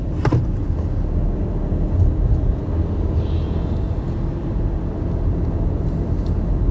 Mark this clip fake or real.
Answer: real